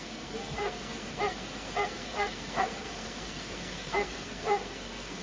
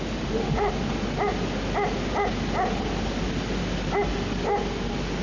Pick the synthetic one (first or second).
first